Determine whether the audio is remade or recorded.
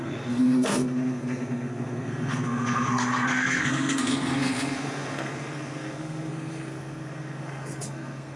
remade